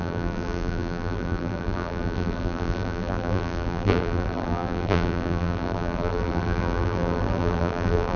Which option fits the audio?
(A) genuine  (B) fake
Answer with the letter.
B